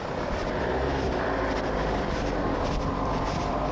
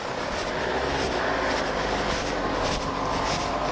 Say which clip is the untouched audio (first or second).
second